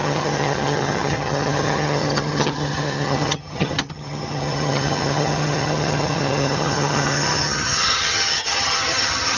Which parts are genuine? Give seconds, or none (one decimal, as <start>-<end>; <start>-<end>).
none